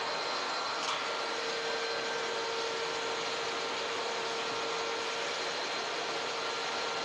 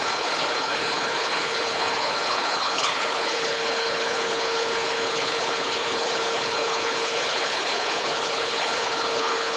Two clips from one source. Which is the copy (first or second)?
second